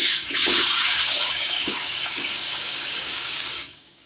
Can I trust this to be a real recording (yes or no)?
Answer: no